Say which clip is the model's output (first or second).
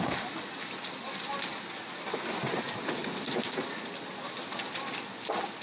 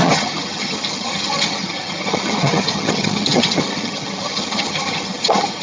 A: second